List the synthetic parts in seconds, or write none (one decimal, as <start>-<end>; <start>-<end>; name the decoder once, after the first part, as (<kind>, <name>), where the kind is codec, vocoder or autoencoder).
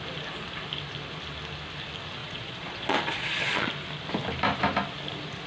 2.2-3.7 (vocoder, Vocos)